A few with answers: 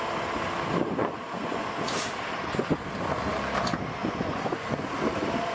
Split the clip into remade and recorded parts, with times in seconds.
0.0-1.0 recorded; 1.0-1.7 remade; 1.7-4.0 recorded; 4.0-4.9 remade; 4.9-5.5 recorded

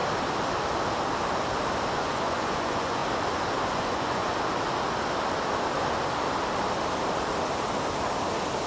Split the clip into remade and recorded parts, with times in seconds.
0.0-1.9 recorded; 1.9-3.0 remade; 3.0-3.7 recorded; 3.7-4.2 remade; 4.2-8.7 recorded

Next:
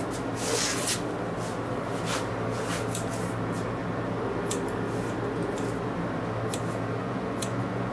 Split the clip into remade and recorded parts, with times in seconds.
0.0-7.0 recorded; 7.0-7.9 remade